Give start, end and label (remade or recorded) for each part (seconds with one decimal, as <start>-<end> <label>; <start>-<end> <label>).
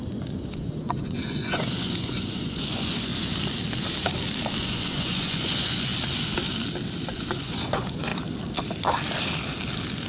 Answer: 0.0-3.1 remade; 3.1-4.6 recorded; 4.6-5.9 remade; 5.9-7.1 recorded; 7.1-8.1 remade; 8.1-10.1 recorded